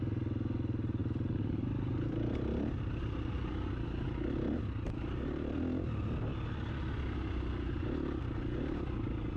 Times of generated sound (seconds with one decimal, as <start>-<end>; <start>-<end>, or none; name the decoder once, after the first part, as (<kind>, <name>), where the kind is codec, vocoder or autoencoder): none